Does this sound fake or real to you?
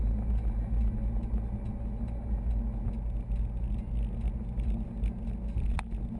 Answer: real